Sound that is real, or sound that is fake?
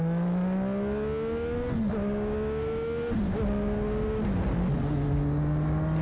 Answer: real